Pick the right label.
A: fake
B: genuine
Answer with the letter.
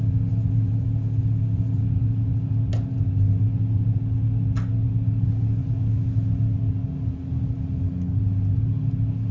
B